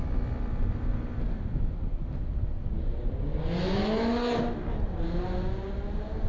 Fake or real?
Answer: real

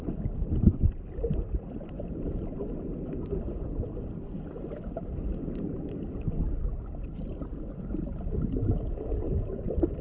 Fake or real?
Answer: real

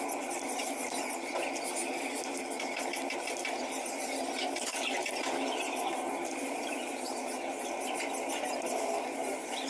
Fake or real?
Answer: real